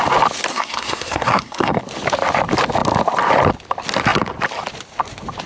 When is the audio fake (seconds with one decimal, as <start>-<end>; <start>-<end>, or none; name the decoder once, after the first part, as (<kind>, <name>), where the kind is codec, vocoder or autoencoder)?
0.5-1.8 (codec, SNAC)